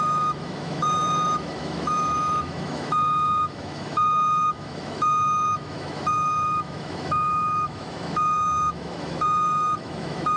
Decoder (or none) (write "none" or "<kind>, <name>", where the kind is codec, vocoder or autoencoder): autoencoder, DAC-VAE